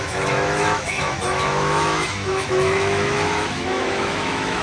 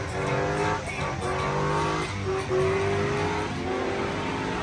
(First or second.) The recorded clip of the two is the second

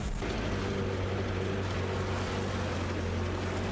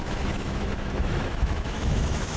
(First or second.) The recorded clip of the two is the first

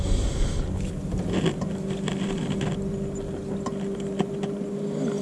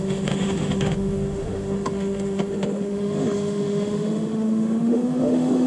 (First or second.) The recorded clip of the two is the first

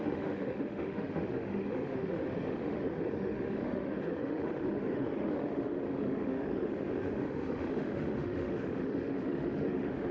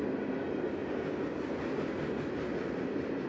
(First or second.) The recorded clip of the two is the second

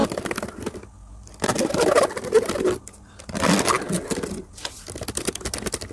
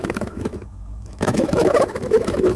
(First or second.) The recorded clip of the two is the first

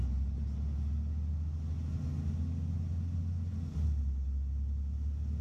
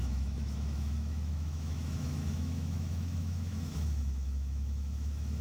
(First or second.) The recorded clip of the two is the first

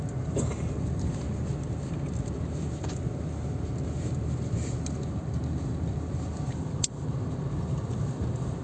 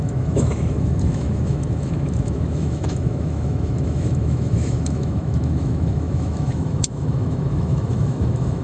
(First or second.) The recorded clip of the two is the first